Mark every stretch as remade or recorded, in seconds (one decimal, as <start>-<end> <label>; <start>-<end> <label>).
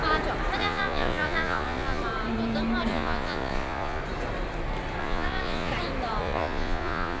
0.0-0.6 recorded; 0.6-2.0 remade; 2.0-2.9 recorded; 2.9-4.0 remade; 4.0-5.0 recorded; 5.0-5.7 remade; 5.7-6.2 recorded; 6.2-7.2 remade